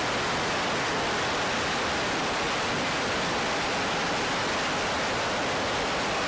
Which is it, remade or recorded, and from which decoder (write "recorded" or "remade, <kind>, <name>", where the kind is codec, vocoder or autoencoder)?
recorded